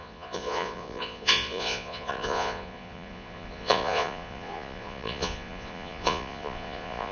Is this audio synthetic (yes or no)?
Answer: yes